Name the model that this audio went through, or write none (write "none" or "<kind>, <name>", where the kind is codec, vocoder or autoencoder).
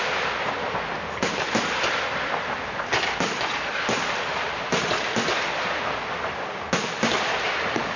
none